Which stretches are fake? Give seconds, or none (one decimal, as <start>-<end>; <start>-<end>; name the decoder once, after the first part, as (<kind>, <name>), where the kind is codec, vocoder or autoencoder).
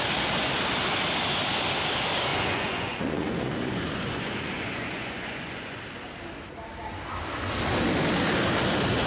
2.3-5.8 (vocoder, Vocos)